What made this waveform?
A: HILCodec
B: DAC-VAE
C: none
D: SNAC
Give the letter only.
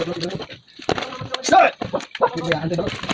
C